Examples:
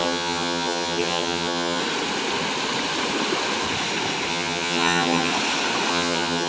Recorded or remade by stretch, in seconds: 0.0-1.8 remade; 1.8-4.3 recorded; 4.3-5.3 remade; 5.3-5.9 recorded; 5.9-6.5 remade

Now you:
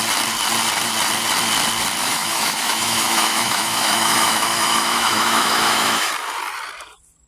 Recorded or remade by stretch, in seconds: 0.0-2.0 recorded; 2.0-6.1 remade; 6.1-7.3 recorded

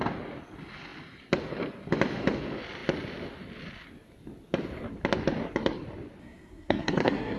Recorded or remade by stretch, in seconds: 0.0-6.2 recorded; 6.2-7.4 remade

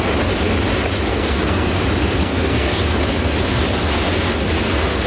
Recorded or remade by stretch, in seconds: 0.0-1.1 recorded; 1.1-1.7 remade; 1.7-2.2 recorded; 2.2-2.8 remade; 2.8-5.1 recorded

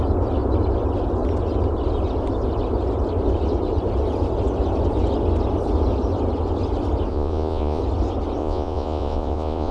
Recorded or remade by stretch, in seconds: 0.0-7.1 recorded; 7.1-7.8 remade; 7.8-8.4 recorded; 8.4-9.7 remade

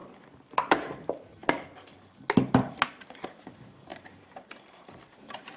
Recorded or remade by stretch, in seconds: 0.0-3.4 recorded; 3.4-5.6 remade

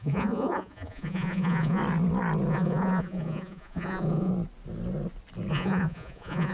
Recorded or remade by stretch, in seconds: 0.0-1.8 remade; 1.8-2.5 recorded; 2.5-4.3 remade; 4.3-5.5 recorded; 5.5-6.5 remade